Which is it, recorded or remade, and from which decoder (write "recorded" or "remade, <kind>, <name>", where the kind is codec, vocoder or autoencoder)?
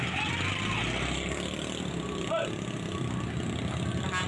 recorded